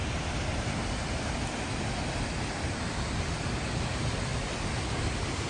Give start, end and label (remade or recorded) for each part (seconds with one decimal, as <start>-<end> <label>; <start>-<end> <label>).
0.0-3.3 recorded; 3.3-4.3 remade; 4.3-4.8 recorded; 4.8-5.5 remade

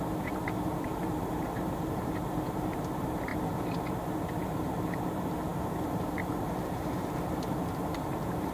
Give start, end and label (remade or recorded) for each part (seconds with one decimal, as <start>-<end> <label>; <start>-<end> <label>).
0.0-3.3 remade; 3.3-4.4 recorded; 4.4-8.5 remade

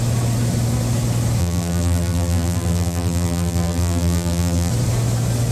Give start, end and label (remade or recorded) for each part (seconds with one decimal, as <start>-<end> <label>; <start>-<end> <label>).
0.0-1.4 recorded; 1.4-4.7 remade; 4.7-5.5 recorded

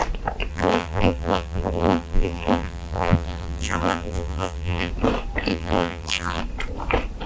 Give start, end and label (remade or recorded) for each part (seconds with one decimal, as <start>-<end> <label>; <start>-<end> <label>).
0.0-0.5 recorded; 0.5-4.9 remade; 4.9-5.5 recorded; 5.5-6.4 remade; 6.4-7.3 recorded